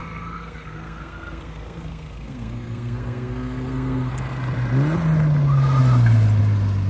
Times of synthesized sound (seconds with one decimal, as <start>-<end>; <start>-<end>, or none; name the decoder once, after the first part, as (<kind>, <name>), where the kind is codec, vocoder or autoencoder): 0.0-4.1 (codec, SNAC)

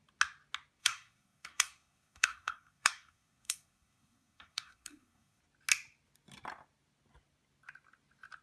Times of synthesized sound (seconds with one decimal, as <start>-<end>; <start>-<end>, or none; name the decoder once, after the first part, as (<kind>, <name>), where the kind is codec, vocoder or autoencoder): 0.8-5.4 (codec, SNAC)

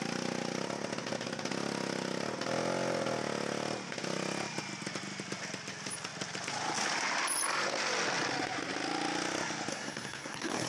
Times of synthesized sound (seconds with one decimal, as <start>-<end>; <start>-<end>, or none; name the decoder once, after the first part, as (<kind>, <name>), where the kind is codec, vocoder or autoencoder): 9.7-10.7 (codec, SNAC)

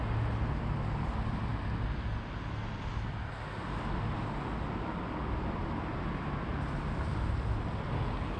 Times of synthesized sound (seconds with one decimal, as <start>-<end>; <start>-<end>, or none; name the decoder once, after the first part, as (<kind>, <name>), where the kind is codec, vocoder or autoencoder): none

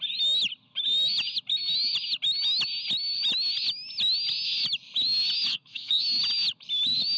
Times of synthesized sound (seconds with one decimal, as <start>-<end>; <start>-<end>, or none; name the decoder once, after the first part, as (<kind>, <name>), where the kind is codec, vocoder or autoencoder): 5.5-6.0 (codec, SNAC)

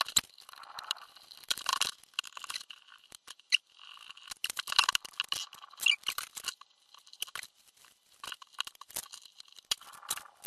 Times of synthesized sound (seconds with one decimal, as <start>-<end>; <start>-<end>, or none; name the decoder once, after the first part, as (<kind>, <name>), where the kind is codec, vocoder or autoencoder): none